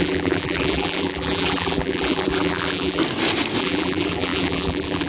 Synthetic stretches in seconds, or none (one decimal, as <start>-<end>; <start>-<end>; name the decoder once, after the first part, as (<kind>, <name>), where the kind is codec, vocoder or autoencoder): 0.0-3.0 (vocoder, BigVGAN v2); 3.6-5.1